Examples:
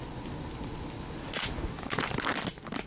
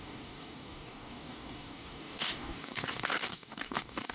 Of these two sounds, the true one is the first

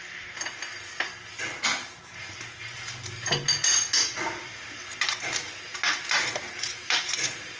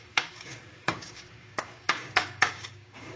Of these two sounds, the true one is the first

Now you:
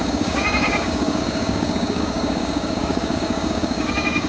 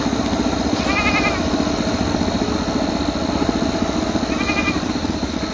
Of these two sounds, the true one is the second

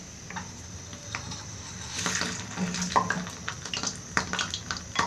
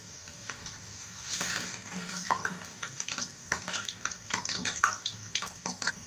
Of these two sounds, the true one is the first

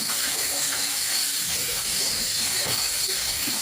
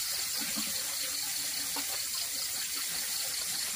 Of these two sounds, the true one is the second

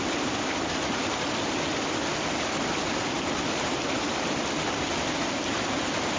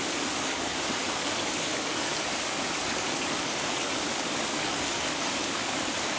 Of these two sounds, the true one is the first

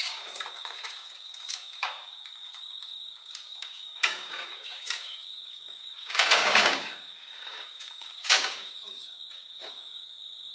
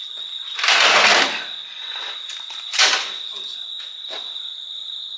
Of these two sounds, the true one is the second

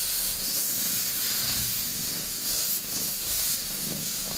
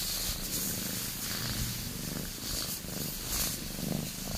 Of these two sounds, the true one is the second